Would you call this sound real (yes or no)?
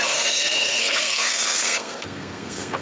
no